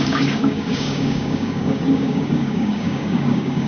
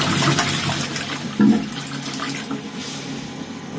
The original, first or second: second